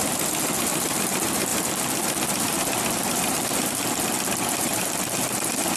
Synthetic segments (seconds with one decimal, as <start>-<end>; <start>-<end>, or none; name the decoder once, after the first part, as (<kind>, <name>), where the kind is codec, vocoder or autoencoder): 1.5-3.7 (vocoder, BigVGAN v2)